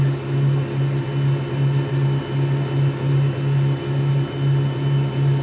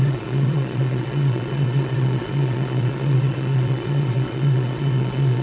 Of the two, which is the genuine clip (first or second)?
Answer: first